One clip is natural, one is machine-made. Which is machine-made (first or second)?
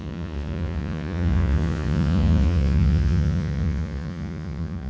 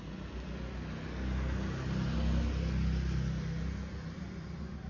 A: first